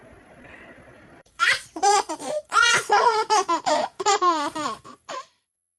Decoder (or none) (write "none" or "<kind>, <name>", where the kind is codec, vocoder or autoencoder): vocoder, Vocos